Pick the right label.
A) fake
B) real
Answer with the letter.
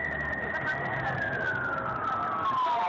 B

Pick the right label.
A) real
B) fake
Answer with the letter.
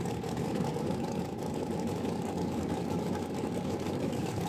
B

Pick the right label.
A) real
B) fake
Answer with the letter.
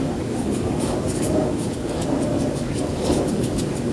B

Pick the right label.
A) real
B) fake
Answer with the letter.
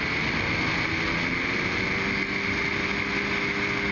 A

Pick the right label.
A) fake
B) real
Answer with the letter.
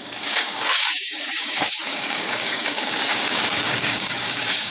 A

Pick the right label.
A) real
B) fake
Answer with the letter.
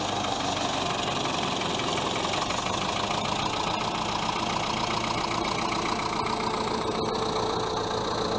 A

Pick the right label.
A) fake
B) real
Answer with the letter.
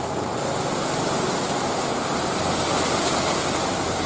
B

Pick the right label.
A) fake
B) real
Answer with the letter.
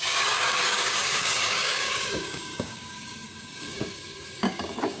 A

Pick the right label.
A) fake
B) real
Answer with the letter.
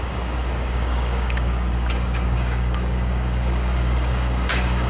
A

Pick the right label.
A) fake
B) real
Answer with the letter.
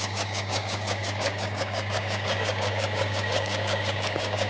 A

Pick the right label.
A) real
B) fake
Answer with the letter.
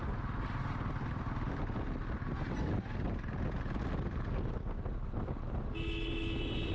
A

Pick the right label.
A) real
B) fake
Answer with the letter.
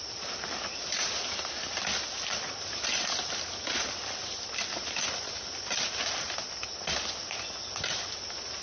A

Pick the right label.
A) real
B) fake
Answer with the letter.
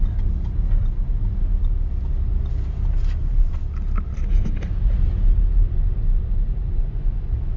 A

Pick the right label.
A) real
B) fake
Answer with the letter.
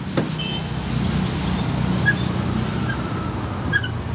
A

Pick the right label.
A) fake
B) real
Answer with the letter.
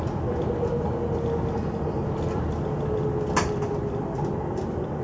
B